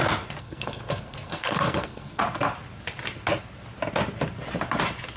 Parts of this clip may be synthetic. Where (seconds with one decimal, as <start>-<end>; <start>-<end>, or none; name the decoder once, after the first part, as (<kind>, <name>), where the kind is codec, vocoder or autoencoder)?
0.4-2.2 (codec, SNAC)